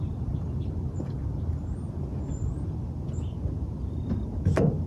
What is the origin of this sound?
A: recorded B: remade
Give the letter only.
A